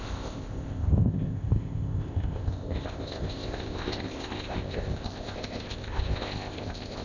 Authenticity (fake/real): fake